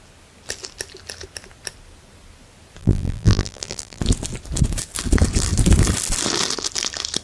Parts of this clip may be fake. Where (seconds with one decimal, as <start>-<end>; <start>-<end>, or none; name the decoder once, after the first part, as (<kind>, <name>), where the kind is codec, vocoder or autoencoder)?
2.8-4.0 (vocoder, BigVGAN v2)